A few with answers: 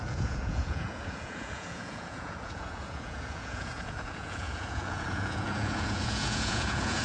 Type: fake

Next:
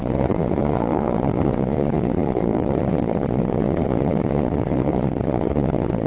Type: fake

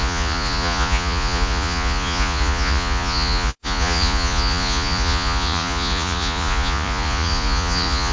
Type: fake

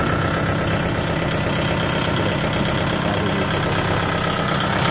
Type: real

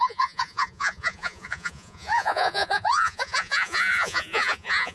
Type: fake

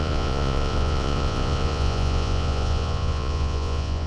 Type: fake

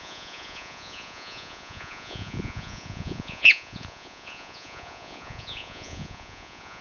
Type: fake